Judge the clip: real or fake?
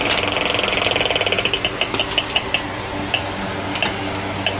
real